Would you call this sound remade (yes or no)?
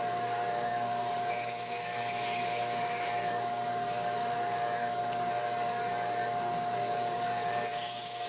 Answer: yes